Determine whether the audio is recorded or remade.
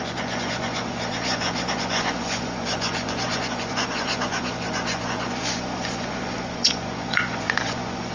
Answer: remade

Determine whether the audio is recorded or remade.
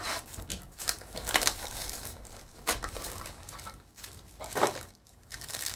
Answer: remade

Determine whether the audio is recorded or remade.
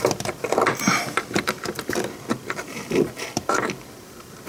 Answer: remade